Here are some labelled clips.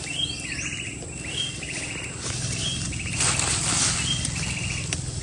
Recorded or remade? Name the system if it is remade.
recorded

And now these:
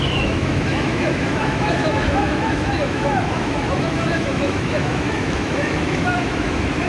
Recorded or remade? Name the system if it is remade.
remade, autoencoder, DAC-VAE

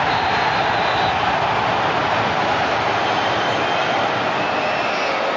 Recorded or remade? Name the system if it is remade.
recorded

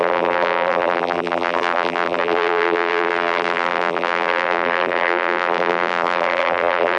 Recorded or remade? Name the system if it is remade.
remade, vocoder, BigVGAN v2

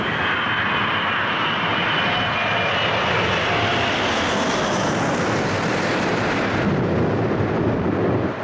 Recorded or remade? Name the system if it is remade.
recorded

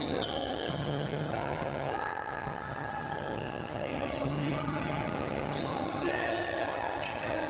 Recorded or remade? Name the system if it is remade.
remade, vocoder, HiFi-GAN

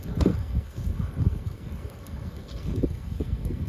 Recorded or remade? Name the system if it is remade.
remade, codec, SNAC